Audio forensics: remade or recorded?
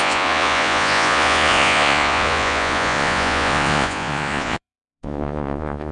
remade